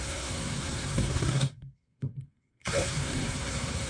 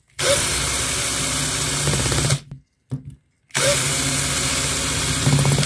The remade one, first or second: first